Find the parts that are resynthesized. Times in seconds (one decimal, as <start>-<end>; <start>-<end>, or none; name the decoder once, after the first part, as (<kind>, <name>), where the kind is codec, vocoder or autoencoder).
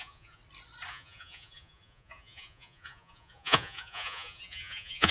0.0-0.4 (vocoder, Vocos); 0.9-5.1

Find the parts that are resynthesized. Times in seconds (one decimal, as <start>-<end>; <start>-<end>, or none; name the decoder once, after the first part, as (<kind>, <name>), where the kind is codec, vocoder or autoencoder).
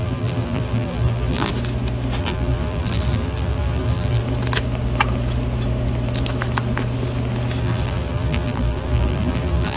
0.0-1.5 (vocoder, BigVGAN v2); 2.2-4.2; 7.6-9.8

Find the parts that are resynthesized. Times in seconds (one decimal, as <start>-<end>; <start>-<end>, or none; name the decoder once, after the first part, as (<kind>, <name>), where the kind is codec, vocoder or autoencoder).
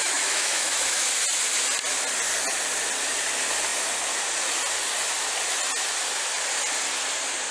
0.0-1.1 (autoencoder, DAC-VAE)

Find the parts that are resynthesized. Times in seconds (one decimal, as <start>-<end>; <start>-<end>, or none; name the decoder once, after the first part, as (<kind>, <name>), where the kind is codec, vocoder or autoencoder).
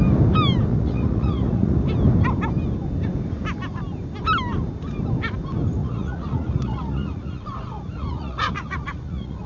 0.7-1.8 (vocoder, Vocos); 5.8-9.5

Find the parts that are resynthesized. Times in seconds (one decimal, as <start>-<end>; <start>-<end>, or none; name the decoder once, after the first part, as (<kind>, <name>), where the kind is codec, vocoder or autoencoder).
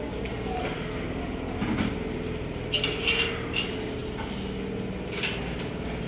none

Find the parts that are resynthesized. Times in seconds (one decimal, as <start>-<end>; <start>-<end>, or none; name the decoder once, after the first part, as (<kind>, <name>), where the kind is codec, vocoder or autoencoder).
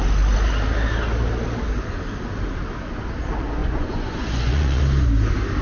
3.6-4.8 (vocoder, Vocos)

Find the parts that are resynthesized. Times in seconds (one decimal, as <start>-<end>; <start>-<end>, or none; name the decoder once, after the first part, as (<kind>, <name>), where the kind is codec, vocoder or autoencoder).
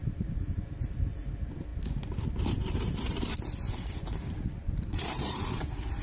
0.0-0.6 (vocoder, BigVGAN v2); 4.6-6.0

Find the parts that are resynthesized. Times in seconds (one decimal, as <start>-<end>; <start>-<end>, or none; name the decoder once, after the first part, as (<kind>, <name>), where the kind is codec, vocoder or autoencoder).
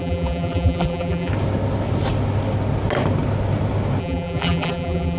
0.0-1.3 (vocoder, BigVGAN v2); 4.0-5.2